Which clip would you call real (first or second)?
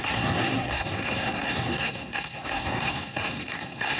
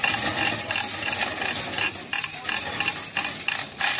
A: second